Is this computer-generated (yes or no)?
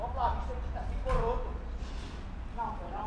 no